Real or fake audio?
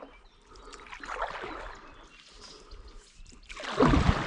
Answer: real